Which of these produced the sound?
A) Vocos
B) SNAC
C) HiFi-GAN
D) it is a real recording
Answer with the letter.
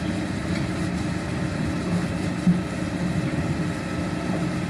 D